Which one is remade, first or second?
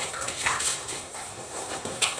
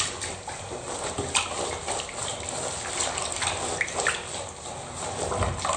first